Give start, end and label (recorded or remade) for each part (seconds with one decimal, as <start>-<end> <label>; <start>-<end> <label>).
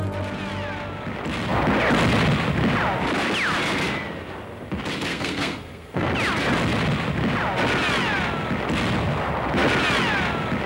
0.0-5.1 recorded; 5.1-6.1 remade; 6.1-10.7 recorded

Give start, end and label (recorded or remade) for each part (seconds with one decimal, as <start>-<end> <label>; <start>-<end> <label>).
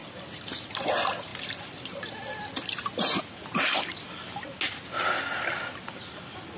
0.0-6.6 recorded